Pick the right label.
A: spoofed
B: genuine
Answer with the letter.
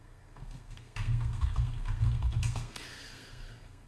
A